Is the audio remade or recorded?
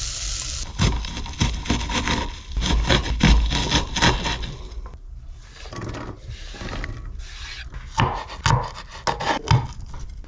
recorded